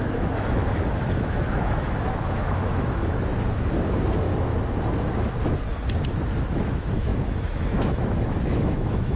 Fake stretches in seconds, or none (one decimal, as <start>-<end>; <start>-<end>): 0.0-3.3; 6.5-9.2